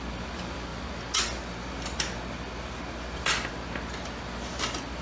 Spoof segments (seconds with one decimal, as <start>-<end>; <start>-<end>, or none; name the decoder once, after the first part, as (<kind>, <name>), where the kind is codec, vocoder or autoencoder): none